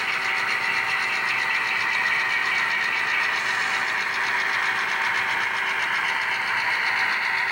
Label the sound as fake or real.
real